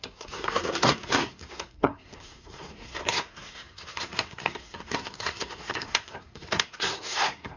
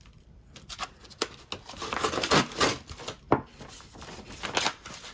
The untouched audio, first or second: second